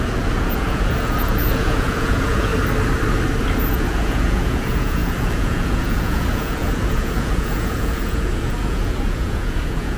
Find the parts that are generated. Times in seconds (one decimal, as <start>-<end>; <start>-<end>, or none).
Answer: 0.0-2.5; 3.7-10.0